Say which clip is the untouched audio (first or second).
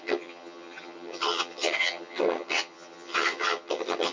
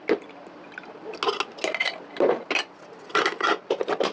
second